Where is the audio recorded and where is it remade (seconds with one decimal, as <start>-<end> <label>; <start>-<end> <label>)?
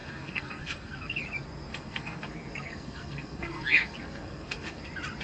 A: 0.0-1.2 remade; 1.2-1.7 recorded; 1.7-4.8 remade; 4.8-5.2 recorded